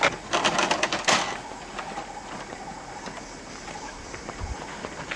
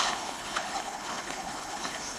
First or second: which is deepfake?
second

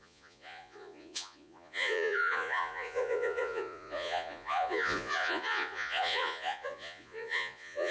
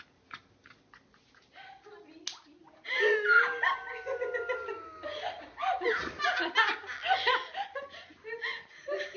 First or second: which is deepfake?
first